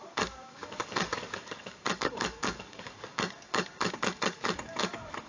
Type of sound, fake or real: fake